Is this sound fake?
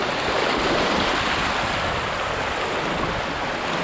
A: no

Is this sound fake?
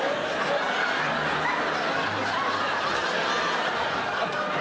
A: no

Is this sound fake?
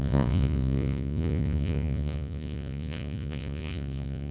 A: yes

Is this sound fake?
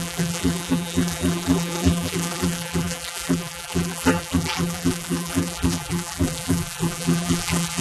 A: yes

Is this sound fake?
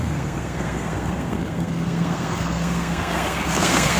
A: yes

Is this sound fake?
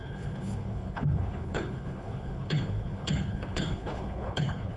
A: yes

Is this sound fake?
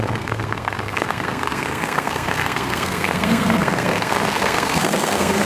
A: yes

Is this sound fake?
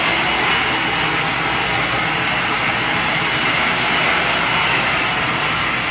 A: no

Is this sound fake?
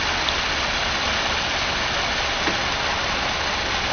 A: no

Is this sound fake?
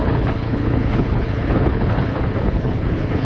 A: yes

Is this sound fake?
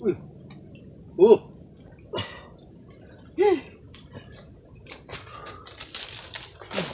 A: no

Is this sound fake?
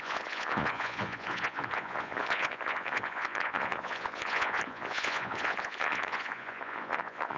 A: yes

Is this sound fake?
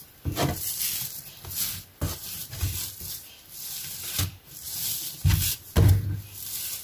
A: no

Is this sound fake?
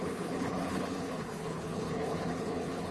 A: yes